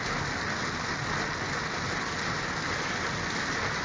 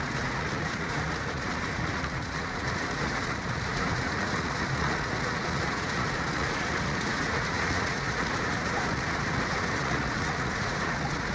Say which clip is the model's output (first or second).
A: second